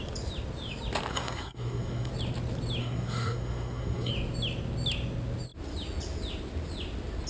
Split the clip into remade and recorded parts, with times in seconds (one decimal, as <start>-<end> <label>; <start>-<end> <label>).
0.0-1.1 recorded; 1.1-2.1 remade; 2.1-2.8 recorded; 2.8-4.1 remade; 4.1-7.3 recorded